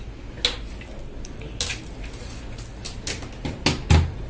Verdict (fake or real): real